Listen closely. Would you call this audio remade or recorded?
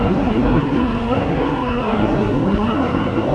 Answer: remade